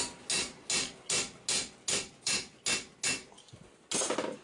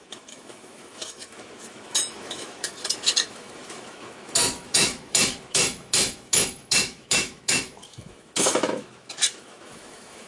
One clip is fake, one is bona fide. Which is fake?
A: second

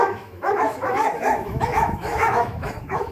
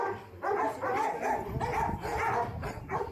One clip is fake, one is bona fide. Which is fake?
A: first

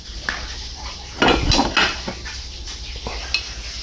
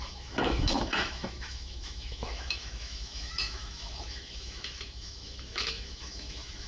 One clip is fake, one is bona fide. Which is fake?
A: second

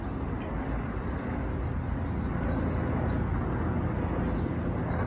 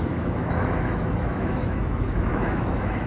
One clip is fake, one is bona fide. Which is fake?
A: second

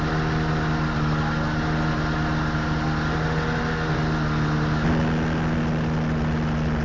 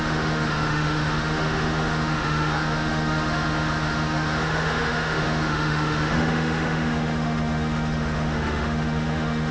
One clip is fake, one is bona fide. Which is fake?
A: second